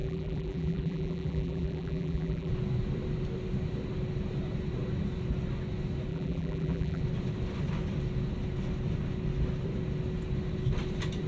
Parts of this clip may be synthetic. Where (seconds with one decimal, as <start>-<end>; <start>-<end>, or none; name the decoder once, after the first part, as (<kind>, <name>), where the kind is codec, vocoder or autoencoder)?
0.0-2.5 (vocoder, BigVGAN v2); 6.1-7.0

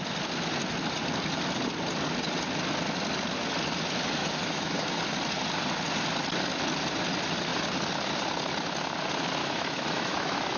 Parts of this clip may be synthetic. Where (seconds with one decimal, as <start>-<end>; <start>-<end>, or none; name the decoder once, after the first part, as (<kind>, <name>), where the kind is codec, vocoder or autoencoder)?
4.2-5.0 (autoencoder, DAC-VAE); 9.4-10.6